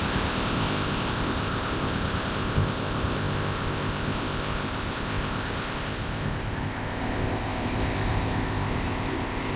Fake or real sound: fake